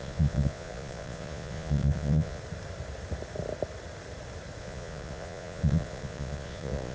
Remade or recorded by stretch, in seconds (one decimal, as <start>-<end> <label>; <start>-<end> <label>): 0.0-2.4 remade; 2.4-4.6 recorded; 4.6-6.9 remade